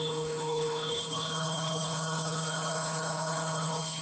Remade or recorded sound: remade